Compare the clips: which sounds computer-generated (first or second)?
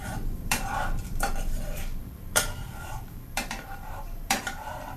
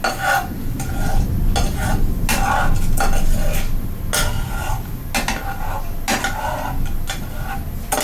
first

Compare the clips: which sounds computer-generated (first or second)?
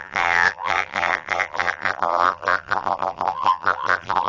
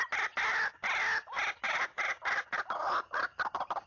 first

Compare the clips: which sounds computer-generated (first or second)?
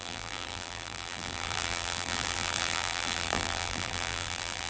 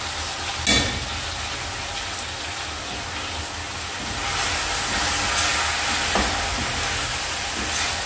first